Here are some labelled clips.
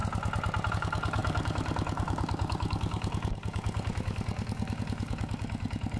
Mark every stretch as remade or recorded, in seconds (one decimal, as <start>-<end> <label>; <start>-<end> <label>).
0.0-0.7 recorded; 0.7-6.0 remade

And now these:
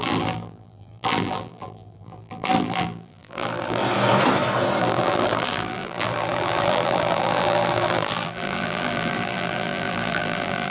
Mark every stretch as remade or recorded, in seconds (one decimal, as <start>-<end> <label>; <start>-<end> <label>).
0.0-3.8 remade; 3.8-4.8 recorded; 4.8-10.7 remade

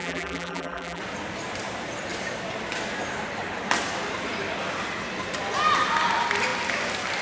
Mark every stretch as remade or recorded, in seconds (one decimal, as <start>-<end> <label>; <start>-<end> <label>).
0.0-1.0 remade; 1.0-7.2 recorded

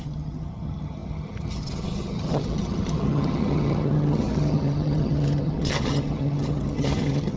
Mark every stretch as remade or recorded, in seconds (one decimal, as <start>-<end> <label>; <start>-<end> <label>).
0.0-7.4 remade

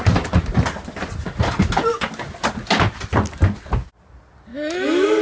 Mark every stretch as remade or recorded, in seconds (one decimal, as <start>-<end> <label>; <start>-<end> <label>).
0.0-4.5 recorded; 4.5-5.2 remade

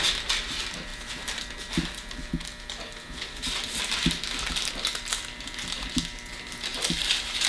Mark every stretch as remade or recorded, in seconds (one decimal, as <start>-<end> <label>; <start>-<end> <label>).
0.0-6.7 recorded; 6.7-7.5 remade

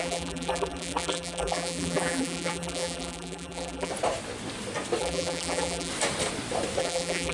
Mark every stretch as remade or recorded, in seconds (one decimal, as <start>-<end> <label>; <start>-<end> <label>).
0.0-3.9 remade; 3.9-5.0 recorded; 5.0-5.9 remade; 5.9-6.8 recorded; 6.8-7.3 remade

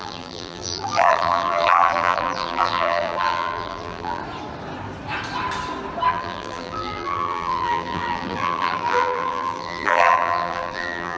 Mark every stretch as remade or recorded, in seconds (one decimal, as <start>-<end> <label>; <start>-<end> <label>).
0.0-4.2 remade; 4.2-6.1 recorded; 6.1-11.2 remade